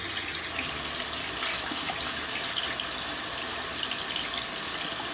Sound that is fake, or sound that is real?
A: real